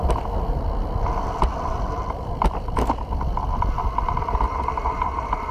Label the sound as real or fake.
real